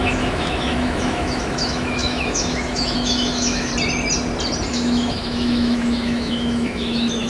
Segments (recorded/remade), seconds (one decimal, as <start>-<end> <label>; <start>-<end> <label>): 0.0-3.7 remade; 3.7-4.7 recorded; 4.7-7.3 remade